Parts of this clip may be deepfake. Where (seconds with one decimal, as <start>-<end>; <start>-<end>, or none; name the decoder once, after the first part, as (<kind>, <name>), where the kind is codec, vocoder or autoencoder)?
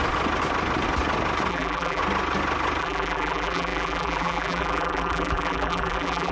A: 1.5-2.0 (vocoder, BigVGAN v2); 2.8-6.3